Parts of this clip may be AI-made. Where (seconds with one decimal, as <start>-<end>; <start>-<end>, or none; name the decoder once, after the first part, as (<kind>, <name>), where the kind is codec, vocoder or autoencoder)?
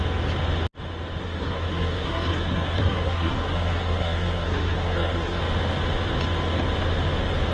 1.2-5.4 (codec, SNAC)